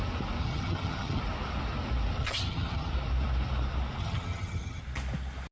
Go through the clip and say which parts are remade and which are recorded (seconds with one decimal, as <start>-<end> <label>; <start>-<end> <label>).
0.0-0.4 recorded; 0.4-1.2 remade; 1.2-2.2 recorded; 2.2-2.9 remade; 2.9-4.0 recorded; 4.0-4.8 remade; 4.8-5.5 recorded